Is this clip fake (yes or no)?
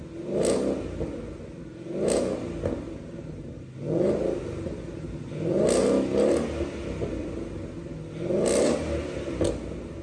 no